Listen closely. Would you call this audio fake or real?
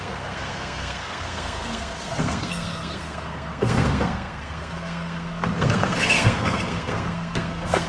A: fake